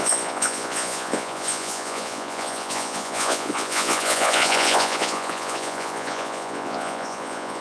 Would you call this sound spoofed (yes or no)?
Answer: yes